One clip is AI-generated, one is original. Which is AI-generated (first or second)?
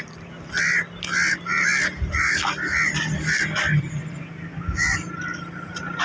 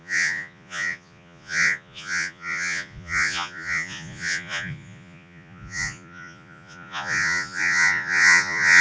second